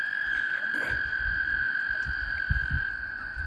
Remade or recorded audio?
remade